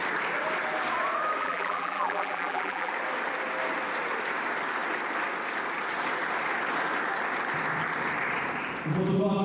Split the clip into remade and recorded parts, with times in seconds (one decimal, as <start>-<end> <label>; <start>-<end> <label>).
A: 0.0-1.4 recorded; 1.4-2.9 remade; 2.9-9.4 recorded